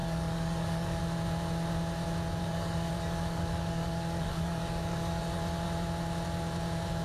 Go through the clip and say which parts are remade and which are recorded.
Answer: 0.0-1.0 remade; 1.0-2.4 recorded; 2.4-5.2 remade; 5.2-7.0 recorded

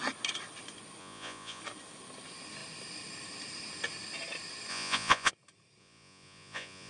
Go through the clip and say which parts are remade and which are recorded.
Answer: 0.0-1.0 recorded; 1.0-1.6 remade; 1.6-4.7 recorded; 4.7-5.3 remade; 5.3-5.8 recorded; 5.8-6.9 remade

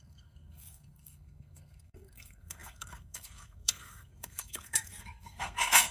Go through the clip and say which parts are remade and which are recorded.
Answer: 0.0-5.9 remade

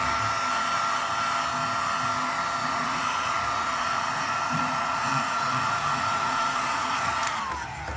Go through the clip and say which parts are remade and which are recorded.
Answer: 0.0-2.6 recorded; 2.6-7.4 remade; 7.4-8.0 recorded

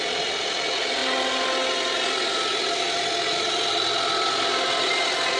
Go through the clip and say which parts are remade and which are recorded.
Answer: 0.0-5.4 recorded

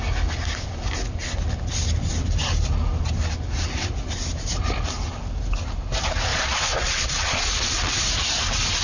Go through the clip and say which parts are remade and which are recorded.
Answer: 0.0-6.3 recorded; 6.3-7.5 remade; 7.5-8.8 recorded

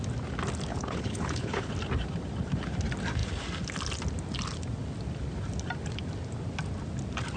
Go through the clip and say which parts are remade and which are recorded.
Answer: 0.0-0.7 recorded; 0.7-1.7 remade; 1.7-7.4 recorded

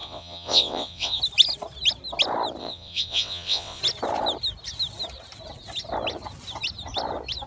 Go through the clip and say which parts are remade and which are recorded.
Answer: 0.0-1.2 remade; 1.2-2.6 recorded; 2.6-3.8 remade; 3.8-7.5 recorded